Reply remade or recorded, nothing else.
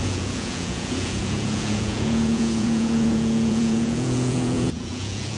remade